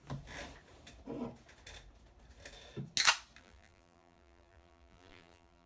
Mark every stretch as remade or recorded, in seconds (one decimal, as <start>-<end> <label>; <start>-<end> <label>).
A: 0.0-3.4 recorded; 3.4-5.7 remade